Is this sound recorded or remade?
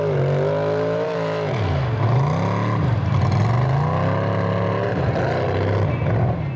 recorded